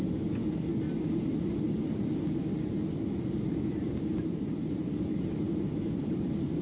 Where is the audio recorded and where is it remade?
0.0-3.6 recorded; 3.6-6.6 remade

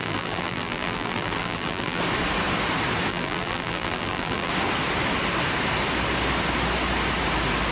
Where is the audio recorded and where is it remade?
0.0-2.0 remade; 2.0-3.1 recorded; 3.1-4.5 remade; 4.5-7.7 recorded

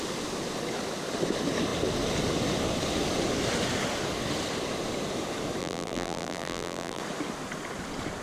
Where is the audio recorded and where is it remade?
0.0-5.6 recorded; 5.6-7.0 remade; 7.0-8.2 recorded

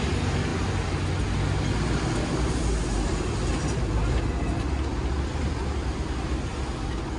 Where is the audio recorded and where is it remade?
0.0-7.2 recorded

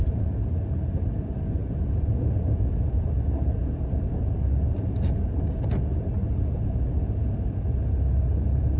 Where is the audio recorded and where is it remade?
0.0-1.6 recorded; 1.6-2.1 remade; 2.1-6.2 recorded; 6.2-6.9 remade; 6.9-8.8 recorded

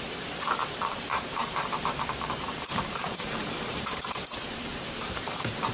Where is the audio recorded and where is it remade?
0.0-5.7 remade

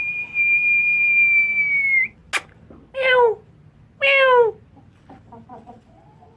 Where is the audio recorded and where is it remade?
0.0-6.4 recorded

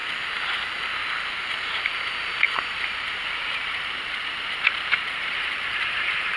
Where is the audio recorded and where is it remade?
0.0-1.3 recorded; 1.3-6.4 remade